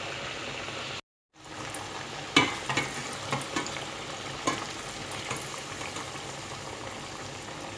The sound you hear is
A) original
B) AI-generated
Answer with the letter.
A